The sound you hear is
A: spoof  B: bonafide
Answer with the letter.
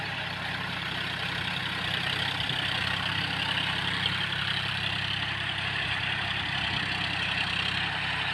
B